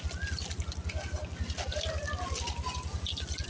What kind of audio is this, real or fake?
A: real